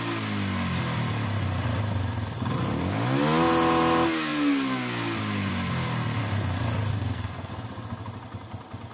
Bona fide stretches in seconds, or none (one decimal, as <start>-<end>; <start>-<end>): 0.0-6.9; 7.5-8.9